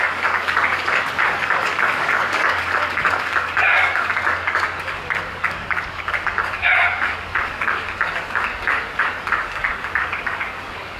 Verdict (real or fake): fake